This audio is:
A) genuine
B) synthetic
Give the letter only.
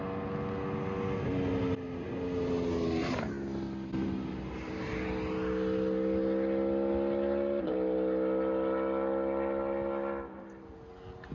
A